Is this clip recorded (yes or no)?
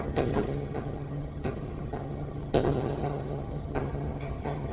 no